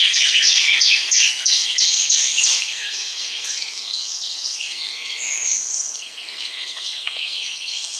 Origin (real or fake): fake